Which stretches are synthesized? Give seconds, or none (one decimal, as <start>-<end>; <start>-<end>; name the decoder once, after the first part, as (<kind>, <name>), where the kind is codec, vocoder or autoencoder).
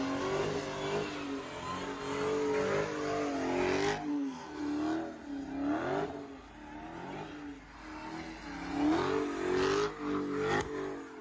4.1-4.6 (codec, SNAC)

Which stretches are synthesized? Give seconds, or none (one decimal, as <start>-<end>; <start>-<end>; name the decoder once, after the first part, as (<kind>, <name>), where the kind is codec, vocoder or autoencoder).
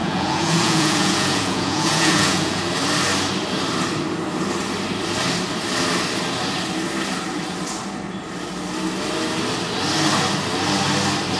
0.0-2.6 (vocoder, Vocos)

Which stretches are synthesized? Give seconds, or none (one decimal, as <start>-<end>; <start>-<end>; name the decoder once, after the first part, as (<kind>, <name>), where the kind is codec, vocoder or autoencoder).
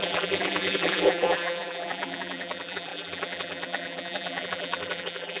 0.0-5.4 (vocoder, BigVGAN v2)